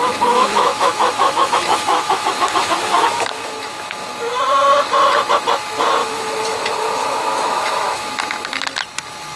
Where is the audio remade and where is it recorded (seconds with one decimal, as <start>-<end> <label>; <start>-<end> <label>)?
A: 0.0-4.1 remade; 4.1-6.0 recorded; 6.0-8.1 remade; 8.1-9.4 recorded